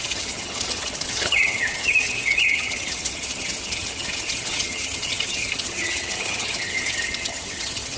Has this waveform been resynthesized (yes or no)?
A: yes